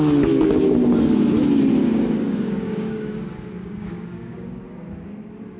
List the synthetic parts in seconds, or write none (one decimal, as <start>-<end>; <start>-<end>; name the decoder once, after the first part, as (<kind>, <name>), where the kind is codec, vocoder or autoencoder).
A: 1.8-4.6 (codec, DAC)